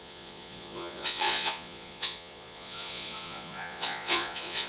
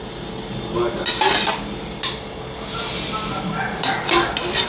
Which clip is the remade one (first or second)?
first